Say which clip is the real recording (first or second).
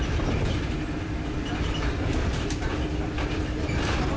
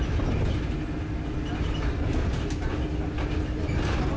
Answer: second